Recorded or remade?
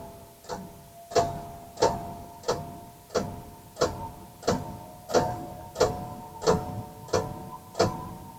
recorded